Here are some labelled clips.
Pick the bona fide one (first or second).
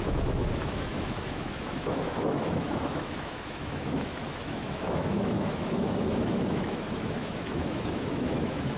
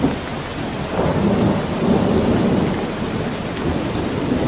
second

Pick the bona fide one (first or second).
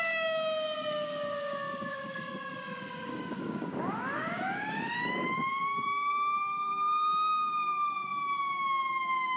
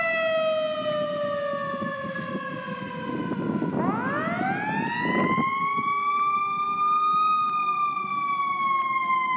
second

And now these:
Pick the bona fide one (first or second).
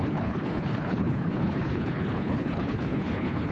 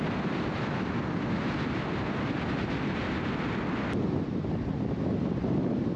second